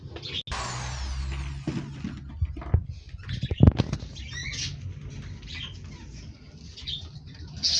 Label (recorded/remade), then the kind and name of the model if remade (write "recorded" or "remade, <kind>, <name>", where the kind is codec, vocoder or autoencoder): recorded